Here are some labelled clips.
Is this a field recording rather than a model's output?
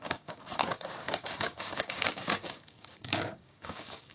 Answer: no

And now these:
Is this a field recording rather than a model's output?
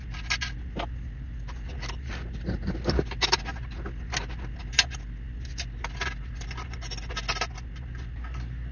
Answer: yes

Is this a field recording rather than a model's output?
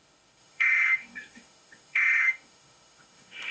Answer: no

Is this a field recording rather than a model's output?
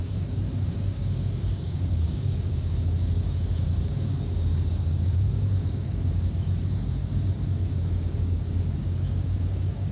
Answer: no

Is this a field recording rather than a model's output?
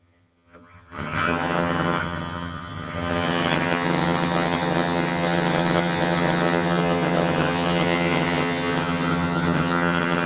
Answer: no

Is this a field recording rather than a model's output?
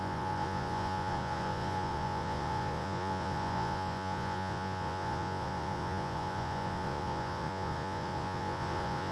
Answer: no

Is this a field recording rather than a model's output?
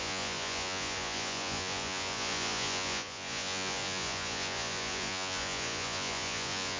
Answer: no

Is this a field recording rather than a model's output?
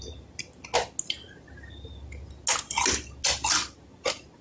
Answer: yes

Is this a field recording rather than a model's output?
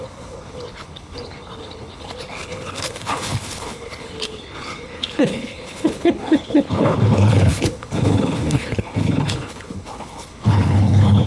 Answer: no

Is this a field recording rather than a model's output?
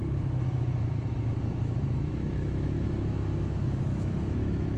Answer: no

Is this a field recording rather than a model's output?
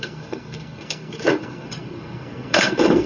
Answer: no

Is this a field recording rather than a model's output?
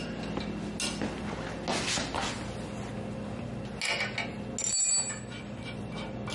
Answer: yes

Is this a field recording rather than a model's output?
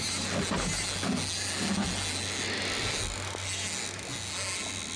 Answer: yes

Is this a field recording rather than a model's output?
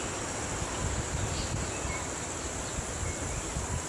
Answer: yes